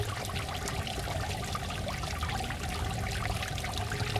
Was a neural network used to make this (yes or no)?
no